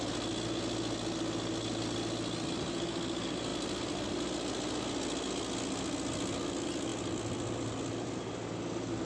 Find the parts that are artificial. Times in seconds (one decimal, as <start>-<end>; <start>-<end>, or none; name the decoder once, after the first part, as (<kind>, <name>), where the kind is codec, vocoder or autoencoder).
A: none